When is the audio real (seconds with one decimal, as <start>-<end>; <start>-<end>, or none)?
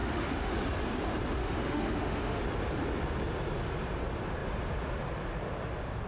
0.5-1.4; 2.4-6.1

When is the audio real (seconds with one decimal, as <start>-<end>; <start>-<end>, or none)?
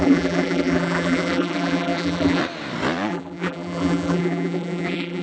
2.4-3.1